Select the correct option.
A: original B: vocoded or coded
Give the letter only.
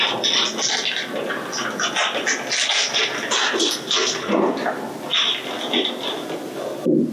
A